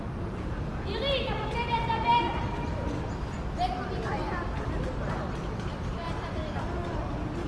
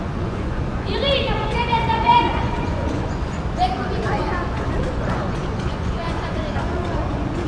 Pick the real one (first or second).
first